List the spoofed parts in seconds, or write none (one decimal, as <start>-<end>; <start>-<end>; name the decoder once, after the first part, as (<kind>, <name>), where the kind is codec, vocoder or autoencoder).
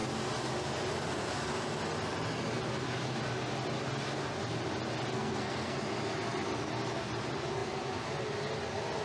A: 5.1-5.8 (codec, SNAC)